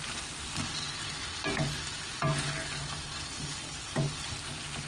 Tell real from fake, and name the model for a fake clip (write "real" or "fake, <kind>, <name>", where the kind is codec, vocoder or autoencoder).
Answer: real